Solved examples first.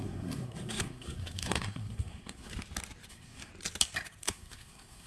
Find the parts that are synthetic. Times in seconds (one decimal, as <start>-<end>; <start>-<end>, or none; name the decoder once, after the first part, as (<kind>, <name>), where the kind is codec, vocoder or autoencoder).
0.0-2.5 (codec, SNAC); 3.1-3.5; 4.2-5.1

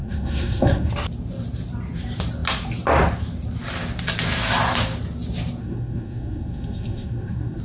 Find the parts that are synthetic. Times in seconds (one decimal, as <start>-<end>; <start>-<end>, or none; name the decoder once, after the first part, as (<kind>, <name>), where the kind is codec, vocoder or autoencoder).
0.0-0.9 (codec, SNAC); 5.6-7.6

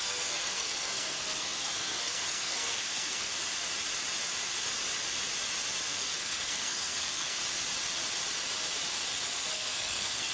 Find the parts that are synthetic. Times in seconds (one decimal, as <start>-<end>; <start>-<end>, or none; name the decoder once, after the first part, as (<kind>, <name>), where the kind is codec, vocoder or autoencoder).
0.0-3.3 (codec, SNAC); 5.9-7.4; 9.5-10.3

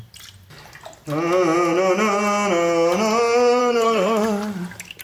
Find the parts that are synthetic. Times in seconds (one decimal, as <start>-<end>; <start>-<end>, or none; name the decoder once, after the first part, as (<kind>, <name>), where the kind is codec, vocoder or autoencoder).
3.6-4.2 (codec, SNAC)

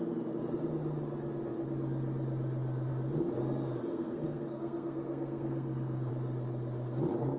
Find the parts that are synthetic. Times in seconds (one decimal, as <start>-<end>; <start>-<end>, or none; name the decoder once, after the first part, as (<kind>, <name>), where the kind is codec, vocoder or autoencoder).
3.9-6.1 (codec, SNAC)